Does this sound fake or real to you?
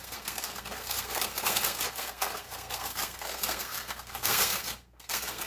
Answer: fake